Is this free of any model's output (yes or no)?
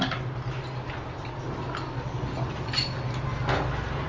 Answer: yes